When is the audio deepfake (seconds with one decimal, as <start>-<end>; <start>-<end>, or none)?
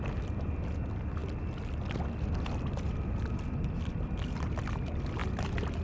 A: none